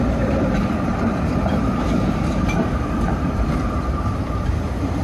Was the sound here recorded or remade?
remade